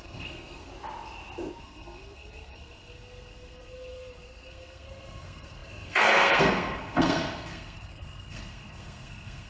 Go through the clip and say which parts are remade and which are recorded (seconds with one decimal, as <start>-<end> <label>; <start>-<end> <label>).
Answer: 0.0-0.7 remade; 0.7-1.6 recorded; 1.6-9.5 remade